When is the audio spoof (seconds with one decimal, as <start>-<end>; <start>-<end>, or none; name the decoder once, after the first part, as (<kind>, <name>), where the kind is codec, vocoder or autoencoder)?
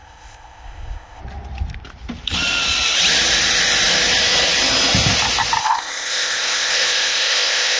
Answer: 0.0-1.2 (codec, ZipCodec); 5.6-7.8